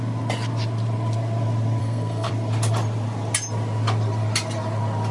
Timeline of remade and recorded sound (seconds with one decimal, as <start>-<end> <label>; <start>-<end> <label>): 0.0-1.8 recorded; 1.8-2.3 remade; 2.3-5.1 recorded

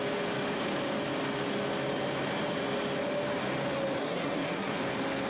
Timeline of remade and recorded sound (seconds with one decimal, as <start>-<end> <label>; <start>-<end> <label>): 0.0-4.0 recorded; 4.0-4.8 remade; 4.8-5.3 recorded

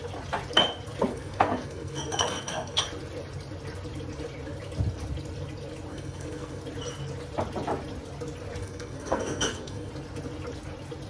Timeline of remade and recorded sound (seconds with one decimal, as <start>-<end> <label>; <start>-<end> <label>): 0.0-1.1 recorded; 1.1-2.8 remade; 2.8-5.9 recorded; 5.9-6.6 remade; 6.6-8.6 recorded; 8.6-9.9 remade; 9.9-11.1 recorded

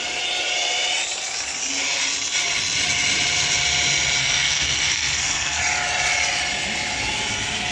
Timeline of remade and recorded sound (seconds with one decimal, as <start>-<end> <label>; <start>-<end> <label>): 0.0-4.2 recorded; 4.2-5.6 remade; 5.6-7.7 recorded